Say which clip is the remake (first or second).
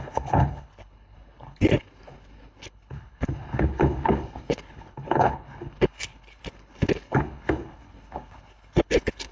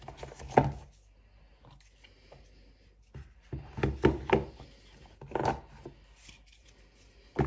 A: first